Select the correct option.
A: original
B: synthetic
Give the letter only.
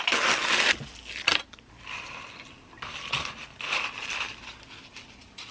A